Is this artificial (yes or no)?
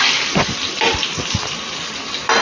no